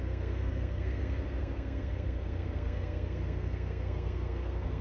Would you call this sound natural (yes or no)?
no